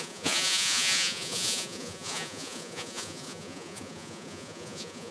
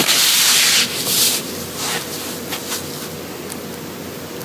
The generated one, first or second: first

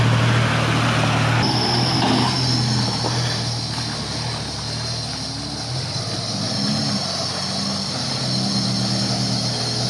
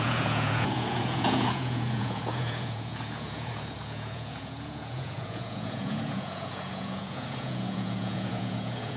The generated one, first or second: second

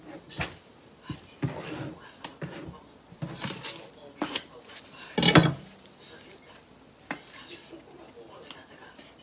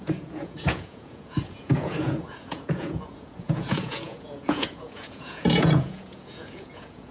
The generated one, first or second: second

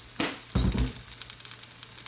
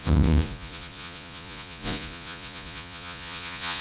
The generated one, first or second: second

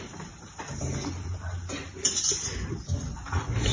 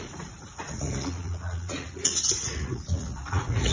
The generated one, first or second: second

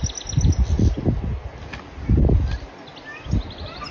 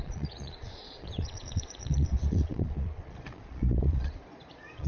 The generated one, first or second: second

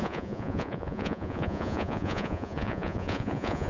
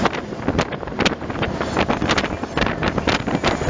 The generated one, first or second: first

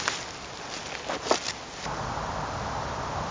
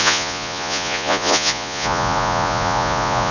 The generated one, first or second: second